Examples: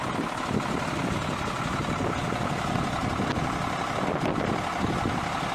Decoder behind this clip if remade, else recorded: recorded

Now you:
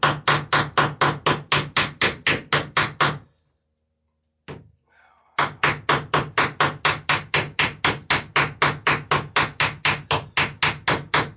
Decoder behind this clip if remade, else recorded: recorded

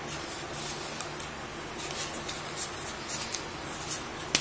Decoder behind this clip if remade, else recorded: recorded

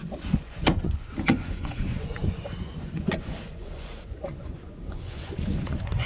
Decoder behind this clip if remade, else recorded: remade, vocoder, Vocos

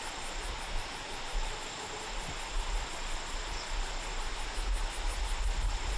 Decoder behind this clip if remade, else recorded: recorded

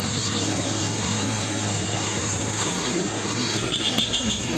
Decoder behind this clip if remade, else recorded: remade, codec, SNAC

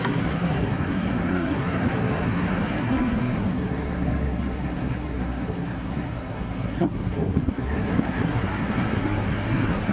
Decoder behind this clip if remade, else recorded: remade, codec, SNAC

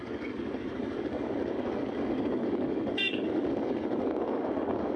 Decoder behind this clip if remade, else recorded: remade, codec, DAC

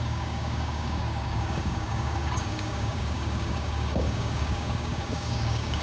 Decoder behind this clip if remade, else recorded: remade, codec, DAC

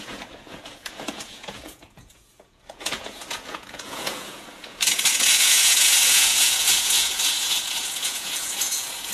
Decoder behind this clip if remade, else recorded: remade, vocoder, Vocos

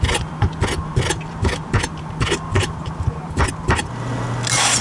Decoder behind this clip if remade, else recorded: recorded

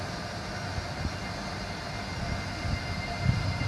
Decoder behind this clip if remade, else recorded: recorded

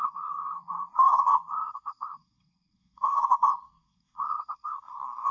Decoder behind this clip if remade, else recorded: remade, codec, SNAC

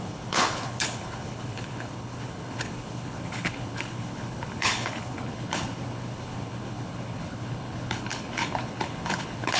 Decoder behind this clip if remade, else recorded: remade, codec, HILCodec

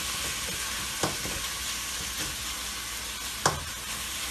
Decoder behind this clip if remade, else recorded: recorded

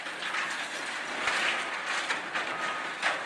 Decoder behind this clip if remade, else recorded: remade, vocoder, BigVGAN v2